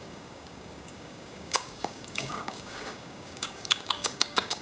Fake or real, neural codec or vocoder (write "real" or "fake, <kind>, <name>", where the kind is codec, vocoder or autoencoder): fake, codec, DAC